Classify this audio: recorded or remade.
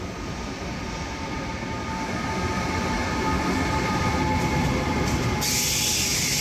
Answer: recorded